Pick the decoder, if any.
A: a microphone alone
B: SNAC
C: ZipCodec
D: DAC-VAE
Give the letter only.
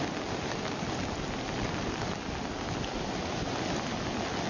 A